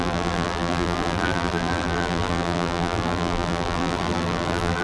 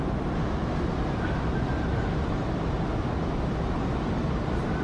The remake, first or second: first